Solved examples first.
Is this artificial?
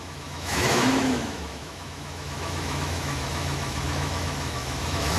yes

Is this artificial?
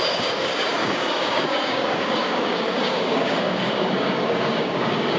yes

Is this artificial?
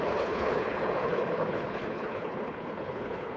yes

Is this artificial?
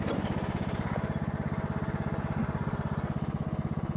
no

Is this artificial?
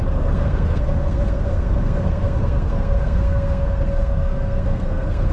yes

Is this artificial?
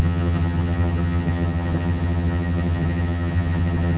yes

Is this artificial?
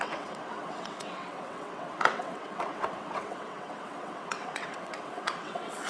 yes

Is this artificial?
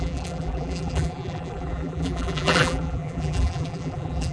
yes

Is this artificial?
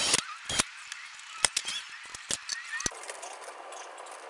no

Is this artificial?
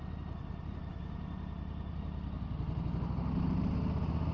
no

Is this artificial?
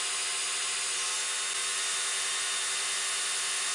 no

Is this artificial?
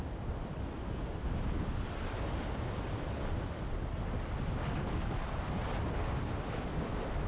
no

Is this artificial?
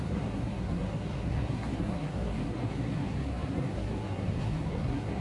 yes